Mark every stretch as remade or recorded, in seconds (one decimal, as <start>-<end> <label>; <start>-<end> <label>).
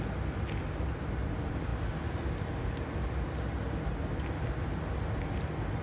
0.0-5.8 recorded